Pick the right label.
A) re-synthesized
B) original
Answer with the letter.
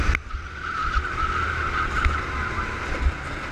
B